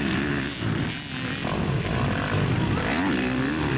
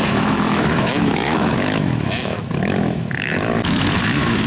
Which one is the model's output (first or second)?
second